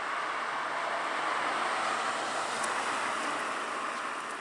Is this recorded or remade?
recorded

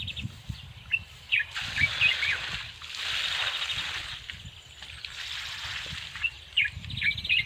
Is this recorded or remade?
recorded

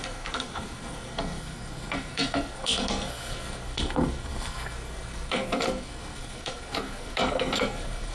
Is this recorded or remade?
remade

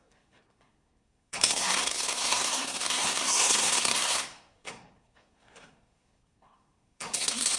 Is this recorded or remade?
remade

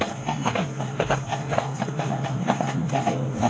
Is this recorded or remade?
remade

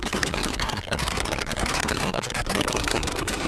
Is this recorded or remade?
remade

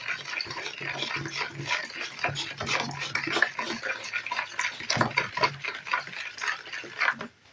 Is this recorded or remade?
recorded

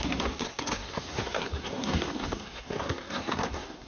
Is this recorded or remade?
remade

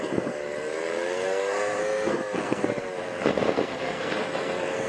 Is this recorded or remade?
remade